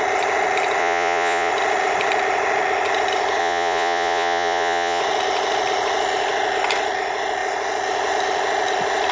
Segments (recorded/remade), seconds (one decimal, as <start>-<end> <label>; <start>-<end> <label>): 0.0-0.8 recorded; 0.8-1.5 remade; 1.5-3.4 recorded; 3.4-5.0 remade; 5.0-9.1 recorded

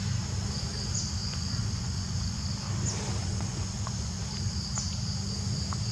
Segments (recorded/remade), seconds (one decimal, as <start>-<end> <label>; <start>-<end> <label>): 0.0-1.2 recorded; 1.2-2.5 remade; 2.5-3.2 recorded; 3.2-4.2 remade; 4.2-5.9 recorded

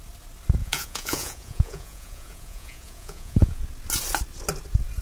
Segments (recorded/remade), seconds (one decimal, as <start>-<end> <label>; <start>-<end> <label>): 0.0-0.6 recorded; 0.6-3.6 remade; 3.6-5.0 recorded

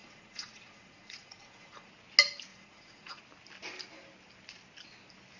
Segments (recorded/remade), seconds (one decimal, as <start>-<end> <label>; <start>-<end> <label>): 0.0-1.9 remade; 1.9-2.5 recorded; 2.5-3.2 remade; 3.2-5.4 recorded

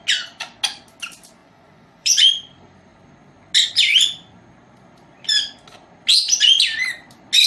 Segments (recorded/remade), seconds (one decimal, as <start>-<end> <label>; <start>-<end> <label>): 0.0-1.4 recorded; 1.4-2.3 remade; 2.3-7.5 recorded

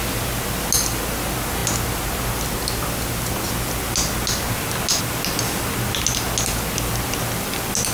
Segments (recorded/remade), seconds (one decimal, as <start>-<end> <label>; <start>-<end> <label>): 0.0-7.9 recorded

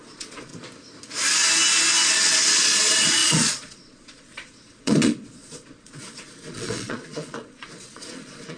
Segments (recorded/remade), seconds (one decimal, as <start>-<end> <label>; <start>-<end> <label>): 0.0-0.5 remade; 0.5-2.1 recorded; 2.1-8.6 remade